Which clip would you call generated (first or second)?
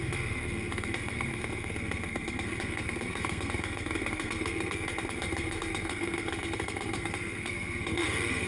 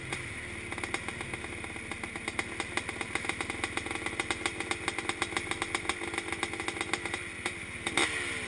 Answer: first